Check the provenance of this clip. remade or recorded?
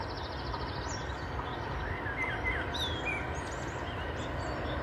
recorded